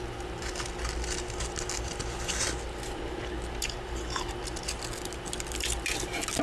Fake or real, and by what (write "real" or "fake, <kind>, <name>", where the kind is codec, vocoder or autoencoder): real